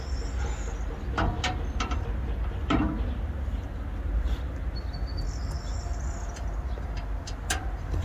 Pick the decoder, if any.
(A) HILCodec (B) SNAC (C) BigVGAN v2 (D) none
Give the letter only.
D